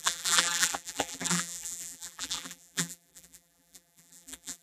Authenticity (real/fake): fake